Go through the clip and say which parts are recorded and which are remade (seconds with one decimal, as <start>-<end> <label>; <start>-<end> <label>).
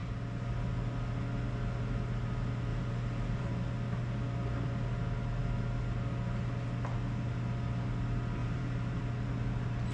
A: 0.0-0.5 remade; 0.5-2.7 recorded; 2.7-3.4 remade; 3.4-8.4 recorded; 8.4-9.0 remade; 9.0-9.9 recorded